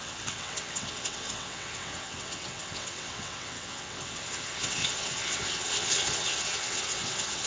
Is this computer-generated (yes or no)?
yes